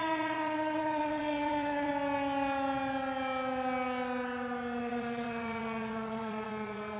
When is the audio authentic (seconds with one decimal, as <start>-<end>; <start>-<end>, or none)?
1.9-4.8

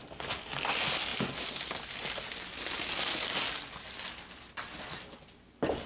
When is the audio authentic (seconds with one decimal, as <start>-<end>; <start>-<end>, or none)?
0.0-5.9

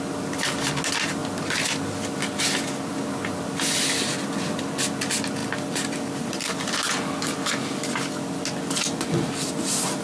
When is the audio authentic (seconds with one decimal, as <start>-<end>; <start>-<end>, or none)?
0.0-10.0

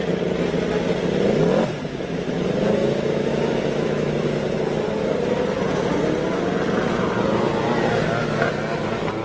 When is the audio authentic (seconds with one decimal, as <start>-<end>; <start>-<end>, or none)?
0.0-2.8; 4.4-9.2

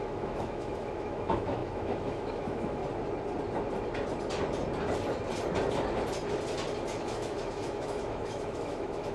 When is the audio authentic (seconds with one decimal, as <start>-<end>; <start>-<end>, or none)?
2.8-7.0

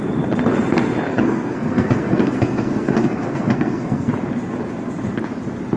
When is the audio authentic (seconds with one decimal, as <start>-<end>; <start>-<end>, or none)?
0.0-1.1; 4.1-5.8